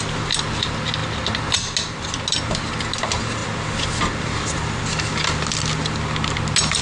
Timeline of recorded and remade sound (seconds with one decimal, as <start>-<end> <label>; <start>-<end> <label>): 0.0-6.8 recorded